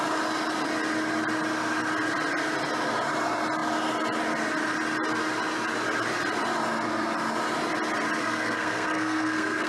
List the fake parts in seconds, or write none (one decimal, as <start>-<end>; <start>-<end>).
8.2-9.7